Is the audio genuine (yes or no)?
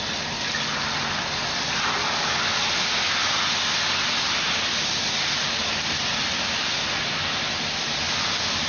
yes